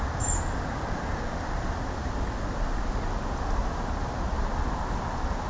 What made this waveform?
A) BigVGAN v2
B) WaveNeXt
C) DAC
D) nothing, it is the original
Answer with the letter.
D